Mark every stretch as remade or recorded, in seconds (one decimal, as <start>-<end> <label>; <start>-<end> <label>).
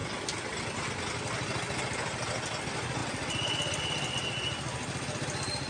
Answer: 0.0-5.7 recorded